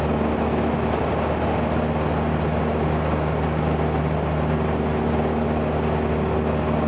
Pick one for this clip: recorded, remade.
recorded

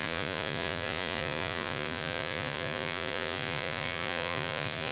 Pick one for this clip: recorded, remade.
remade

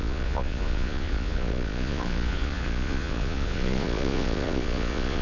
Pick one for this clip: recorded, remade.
remade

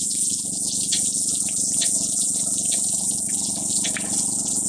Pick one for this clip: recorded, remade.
remade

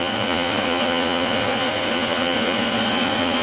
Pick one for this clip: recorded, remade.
remade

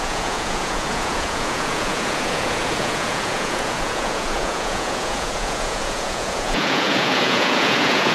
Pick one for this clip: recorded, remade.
remade